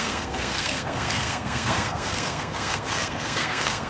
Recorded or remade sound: remade